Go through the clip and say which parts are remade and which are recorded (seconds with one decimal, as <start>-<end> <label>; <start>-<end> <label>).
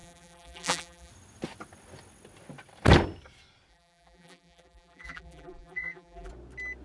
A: 0.0-1.1 remade; 1.1-3.7 recorded; 3.7-6.3 remade; 6.3-6.8 recorded